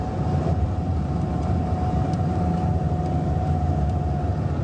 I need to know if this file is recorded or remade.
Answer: remade